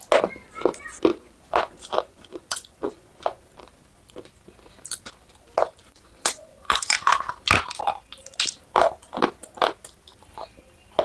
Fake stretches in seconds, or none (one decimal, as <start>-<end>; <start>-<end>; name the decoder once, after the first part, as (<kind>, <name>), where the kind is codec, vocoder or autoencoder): 1.1-3.4 (vocoder, Vocos); 5.8-7.1